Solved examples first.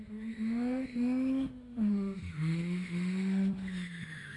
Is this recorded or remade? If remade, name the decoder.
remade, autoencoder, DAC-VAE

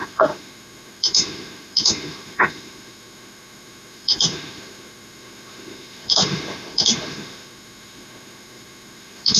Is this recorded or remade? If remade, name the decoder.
remade, autoencoder, DAC-VAE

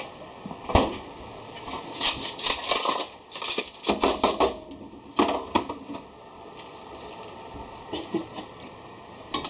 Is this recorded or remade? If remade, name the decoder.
recorded